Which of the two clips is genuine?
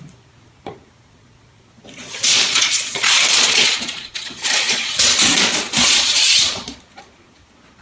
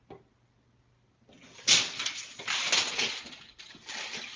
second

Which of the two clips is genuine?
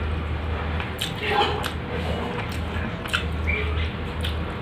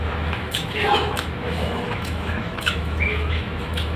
first